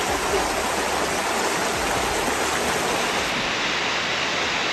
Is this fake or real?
real